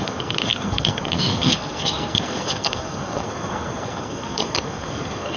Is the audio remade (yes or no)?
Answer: yes